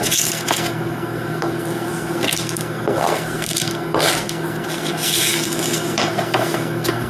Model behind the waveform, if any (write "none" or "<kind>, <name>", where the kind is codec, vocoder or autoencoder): codec, SNAC